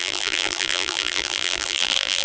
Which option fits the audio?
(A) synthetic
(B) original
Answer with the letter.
A